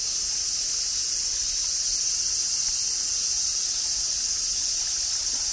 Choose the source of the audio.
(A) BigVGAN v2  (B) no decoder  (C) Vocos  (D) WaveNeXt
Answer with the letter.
B